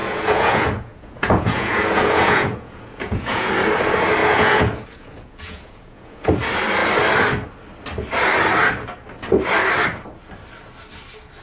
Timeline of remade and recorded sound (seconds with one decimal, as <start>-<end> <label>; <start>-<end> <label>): 0.0-3.5 remade; 3.5-4.2 recorded; 4.2-6.3 remade; 6.3-11.4 recorded